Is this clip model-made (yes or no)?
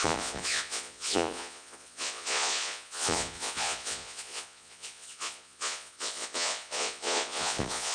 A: yes